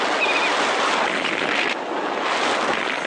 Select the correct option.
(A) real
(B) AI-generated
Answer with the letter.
A